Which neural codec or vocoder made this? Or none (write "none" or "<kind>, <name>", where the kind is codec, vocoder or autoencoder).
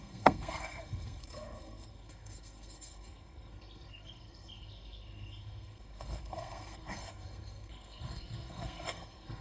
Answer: codec, SNAC